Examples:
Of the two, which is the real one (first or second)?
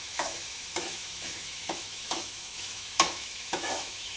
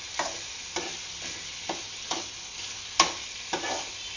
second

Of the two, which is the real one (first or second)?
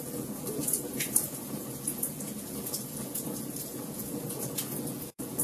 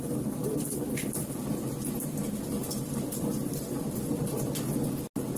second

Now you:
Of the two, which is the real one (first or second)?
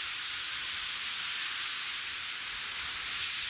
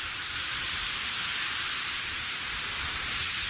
first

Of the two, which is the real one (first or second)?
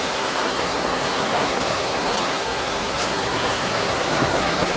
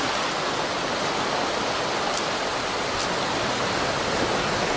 second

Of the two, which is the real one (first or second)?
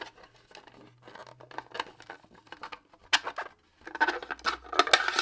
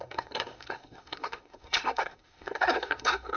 first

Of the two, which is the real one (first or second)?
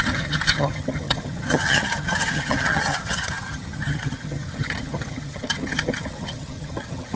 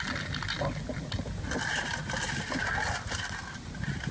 second